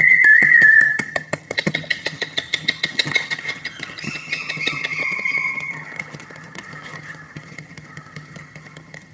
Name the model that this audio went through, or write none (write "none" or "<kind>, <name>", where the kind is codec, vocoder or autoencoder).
vocoder, HiFi-GAN